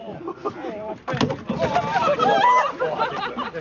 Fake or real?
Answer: real